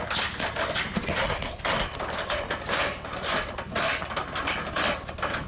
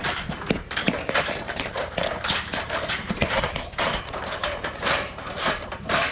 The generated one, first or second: second